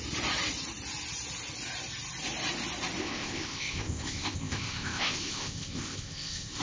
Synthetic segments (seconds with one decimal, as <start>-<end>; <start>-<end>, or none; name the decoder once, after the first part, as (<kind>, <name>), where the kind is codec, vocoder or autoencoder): 3.0-6.6 (codec, ZipCodec)